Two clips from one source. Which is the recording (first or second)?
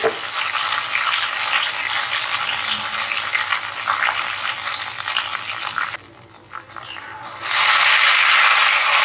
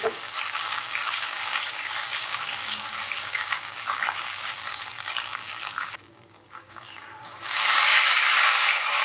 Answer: first